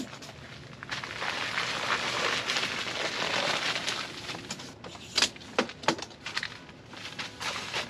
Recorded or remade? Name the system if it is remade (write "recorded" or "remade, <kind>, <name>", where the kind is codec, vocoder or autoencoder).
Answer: recorded